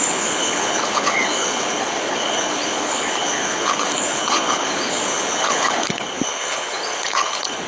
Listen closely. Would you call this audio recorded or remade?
remade